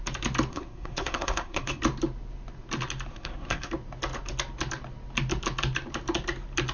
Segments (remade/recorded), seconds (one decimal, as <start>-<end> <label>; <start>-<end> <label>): 0.0-0.5 recorded; 0.5-1.8 remade; 1.8-3.1 recorded; 3.1-3.7 remade; 3.7-6.7 recorded